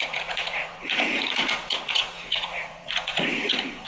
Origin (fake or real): fake